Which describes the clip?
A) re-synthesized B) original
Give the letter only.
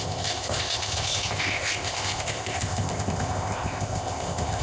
A